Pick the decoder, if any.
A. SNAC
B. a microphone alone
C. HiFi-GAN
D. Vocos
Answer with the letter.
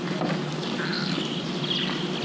B